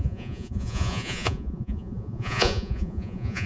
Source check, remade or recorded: remade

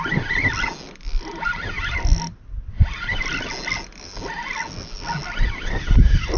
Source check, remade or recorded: recorded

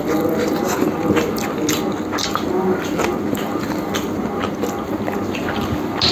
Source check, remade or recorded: recorded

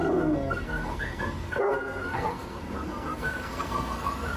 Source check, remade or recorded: remade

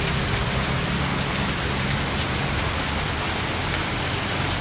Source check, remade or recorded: recorded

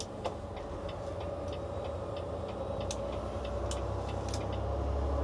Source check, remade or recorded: recorded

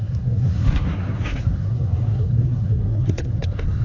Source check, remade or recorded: remade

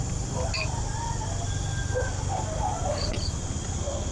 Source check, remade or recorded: recorded